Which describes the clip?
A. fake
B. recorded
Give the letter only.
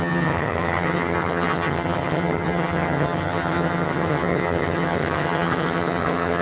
A